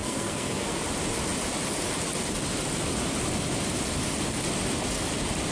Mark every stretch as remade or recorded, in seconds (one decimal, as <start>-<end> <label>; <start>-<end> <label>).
0.0-0.8 remade; 0.8-5.5 recorded